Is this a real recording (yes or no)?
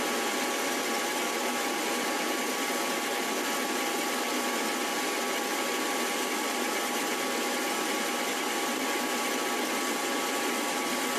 yes